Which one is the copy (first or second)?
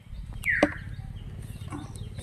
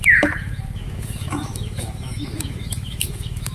second